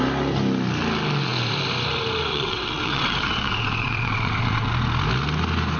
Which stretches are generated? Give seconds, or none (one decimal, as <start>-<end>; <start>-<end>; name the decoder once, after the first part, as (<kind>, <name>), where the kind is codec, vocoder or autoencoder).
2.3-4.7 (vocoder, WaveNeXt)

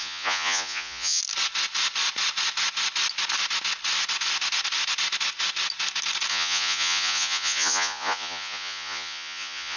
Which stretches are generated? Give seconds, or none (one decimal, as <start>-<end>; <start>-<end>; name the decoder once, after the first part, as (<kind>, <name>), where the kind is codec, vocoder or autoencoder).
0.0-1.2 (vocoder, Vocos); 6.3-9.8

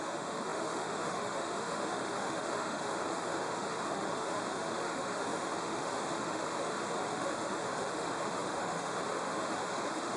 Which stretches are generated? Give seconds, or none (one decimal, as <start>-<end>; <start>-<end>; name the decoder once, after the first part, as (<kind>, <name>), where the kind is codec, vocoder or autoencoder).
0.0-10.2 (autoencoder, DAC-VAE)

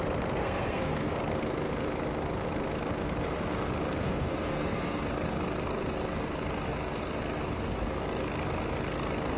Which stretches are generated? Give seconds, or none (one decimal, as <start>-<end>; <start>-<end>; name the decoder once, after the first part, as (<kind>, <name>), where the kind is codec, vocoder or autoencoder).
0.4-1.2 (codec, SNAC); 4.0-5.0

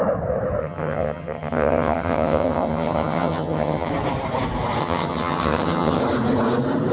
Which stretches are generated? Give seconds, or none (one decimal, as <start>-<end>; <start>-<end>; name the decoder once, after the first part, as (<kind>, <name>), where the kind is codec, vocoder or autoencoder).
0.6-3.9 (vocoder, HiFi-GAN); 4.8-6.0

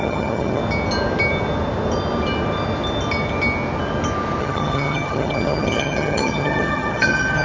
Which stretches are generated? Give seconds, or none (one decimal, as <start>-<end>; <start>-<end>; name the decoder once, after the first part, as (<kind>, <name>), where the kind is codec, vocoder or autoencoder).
0.0-0.6 (vocoder, HiFi-GAN); 4.4-7.4

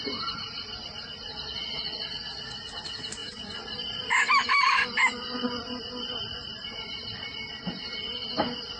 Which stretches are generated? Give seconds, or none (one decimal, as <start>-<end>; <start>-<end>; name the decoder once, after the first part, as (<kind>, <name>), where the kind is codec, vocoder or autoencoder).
1.3-2.6 (vocoder, Vocos)

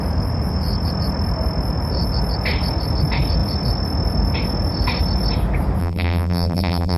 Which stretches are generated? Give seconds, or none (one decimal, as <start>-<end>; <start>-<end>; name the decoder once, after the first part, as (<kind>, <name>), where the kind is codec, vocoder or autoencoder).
5.8-7.0 (vocoder, BigVGAN v2)